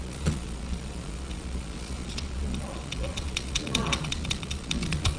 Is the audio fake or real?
fake